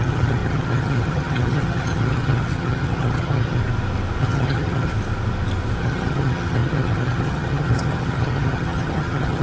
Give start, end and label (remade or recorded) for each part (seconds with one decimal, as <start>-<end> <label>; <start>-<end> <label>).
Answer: 0.0-3.6 remade; 3.6-4.2 recorded; 4.2-4.9 remade; 4.9-5.8 recorded; 5.8-9.4 remade